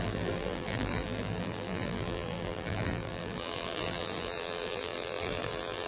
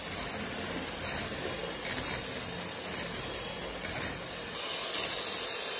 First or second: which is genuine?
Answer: second